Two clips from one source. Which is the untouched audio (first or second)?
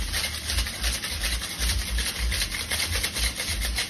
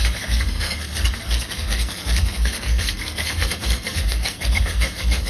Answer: first